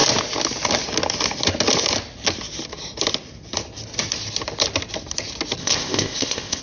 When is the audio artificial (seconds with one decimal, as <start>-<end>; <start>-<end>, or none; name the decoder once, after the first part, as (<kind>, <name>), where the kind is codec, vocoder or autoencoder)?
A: 5.6-6.6 (codec, ZipCodec)